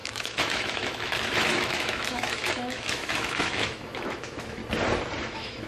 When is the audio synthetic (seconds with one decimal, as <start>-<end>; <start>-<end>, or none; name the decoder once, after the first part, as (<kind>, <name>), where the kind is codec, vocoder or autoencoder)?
0.0-4.6 (autoencoder, DAC-VAE); 5.2-5.7